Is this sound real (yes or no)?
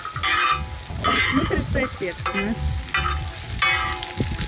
yes